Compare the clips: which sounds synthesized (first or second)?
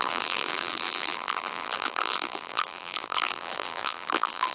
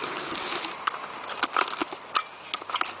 first